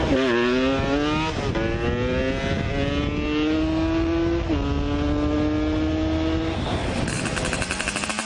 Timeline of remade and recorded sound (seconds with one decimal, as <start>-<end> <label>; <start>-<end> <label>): 0.0-8.3 recorded